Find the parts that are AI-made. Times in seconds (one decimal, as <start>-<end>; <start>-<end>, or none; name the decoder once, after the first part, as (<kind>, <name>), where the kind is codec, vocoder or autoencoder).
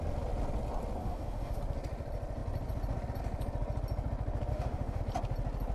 1.0-1.6 (autoencoder, DAC-VAE); 4.5-5.0